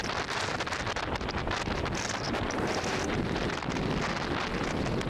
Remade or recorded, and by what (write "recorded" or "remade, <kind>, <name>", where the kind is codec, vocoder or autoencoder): recorded